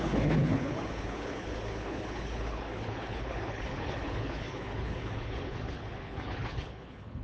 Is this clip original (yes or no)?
no